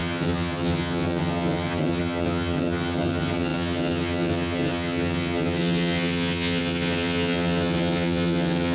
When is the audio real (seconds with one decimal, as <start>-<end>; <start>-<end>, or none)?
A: none